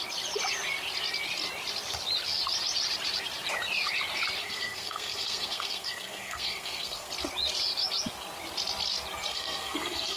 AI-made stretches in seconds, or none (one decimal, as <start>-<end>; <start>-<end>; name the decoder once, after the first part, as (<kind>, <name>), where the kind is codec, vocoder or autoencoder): 4.4-7.1 (codec, SNAC); 9.3-10.2